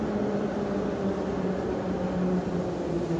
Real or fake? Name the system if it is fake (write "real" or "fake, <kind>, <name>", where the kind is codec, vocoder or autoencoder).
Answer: real